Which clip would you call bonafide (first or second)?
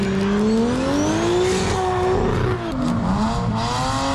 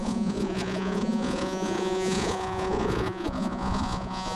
first